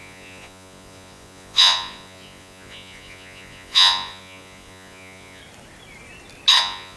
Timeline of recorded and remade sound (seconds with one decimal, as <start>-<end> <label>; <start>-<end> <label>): 0.0-5.4 remade; 5.4-6.6 recorded; 6.6-7.0 remade